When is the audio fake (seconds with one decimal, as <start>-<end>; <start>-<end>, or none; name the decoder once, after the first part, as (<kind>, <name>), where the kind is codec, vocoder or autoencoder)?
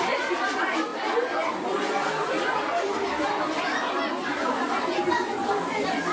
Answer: none